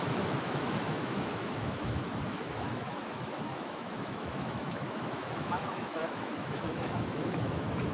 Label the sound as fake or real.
fake